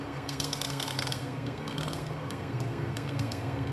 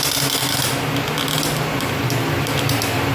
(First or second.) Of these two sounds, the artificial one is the first